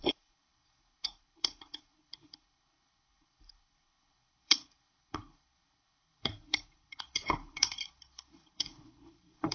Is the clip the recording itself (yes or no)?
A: no